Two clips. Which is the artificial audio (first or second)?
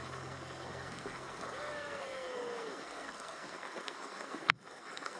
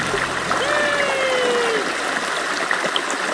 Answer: first